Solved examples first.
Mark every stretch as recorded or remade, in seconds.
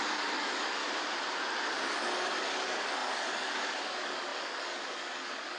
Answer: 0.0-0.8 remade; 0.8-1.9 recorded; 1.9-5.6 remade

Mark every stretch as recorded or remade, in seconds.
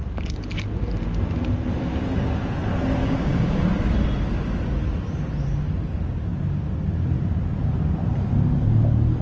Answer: 0.0-3.0 recorded; 3.0-3.6 remade; 3.6-9.2 recorded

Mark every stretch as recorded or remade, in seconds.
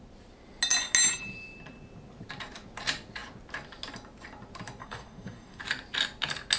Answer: 0.0-4.8 recorded; 4.8-5.6 remade; 5.6-6.6 recorded